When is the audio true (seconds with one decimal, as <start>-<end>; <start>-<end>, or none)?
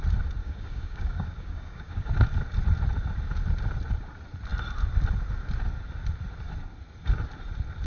0.0-0.4; 2.1-7.9